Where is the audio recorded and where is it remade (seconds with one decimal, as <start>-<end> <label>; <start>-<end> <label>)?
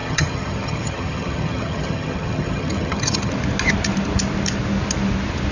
0.0-3.3 remade; 3.3-5.5 recorded